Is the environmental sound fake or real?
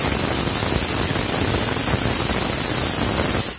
real